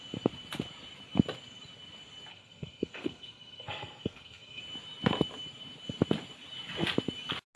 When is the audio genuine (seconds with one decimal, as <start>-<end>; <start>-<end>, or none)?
0.0-2.3; 4.6-7.6